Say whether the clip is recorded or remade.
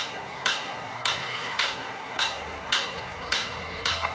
remade